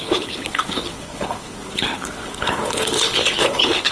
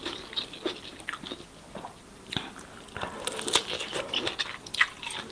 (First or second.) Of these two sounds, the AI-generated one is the first